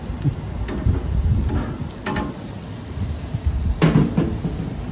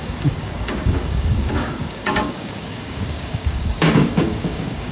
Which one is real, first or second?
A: first